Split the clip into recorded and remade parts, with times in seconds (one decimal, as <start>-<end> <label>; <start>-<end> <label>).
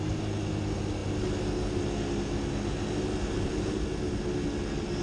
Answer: 0.0-5.0 recorded